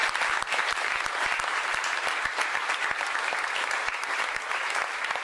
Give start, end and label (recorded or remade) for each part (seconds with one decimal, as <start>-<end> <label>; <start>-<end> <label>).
0.0-5.2 recorded